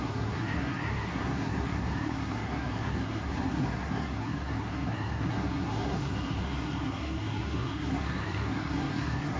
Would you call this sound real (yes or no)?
no